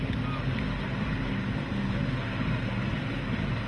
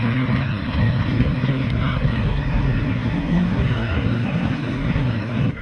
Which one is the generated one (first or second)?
second